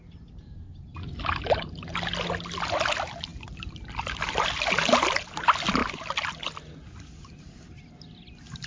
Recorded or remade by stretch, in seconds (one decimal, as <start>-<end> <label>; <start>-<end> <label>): 0.0-8.7 recorded